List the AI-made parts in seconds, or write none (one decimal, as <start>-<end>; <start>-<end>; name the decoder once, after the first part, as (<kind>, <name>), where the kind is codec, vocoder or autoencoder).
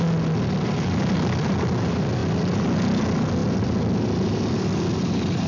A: none